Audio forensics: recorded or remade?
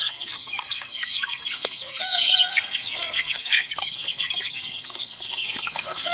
remade